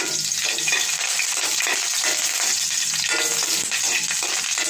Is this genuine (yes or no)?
yes